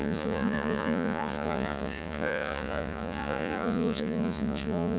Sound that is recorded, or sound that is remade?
remade